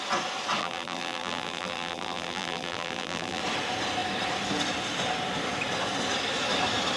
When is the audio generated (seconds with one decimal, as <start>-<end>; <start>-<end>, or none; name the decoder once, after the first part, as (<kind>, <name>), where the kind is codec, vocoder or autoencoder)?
0.6-3.4 (vocoder, BigVGAN v2)